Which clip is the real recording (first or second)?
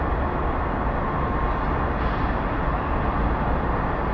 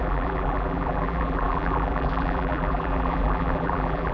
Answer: first